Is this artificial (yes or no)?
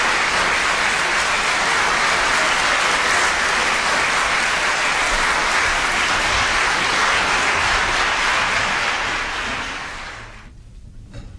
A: no